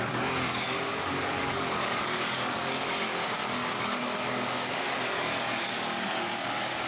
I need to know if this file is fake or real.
fake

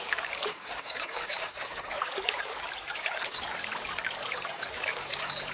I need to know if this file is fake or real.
fake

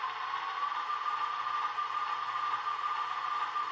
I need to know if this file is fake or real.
real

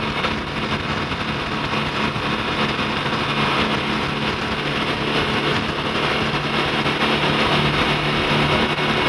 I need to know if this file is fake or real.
real